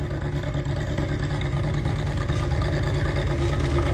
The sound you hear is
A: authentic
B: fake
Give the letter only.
A